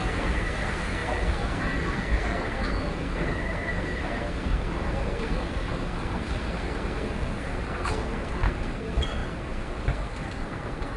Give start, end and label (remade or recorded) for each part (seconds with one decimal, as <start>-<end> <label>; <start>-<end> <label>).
0.0-11.0 remade